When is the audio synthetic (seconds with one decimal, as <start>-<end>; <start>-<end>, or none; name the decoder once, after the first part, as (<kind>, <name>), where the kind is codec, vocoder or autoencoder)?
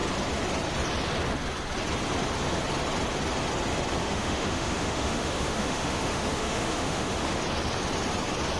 4.0-7.4 (autoencoder, DAC-VAE)